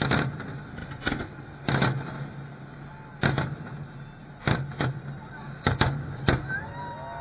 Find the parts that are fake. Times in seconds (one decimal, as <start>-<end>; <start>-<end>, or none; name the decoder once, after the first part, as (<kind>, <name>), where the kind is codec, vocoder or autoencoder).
5.4-6.2 (codec, DAC)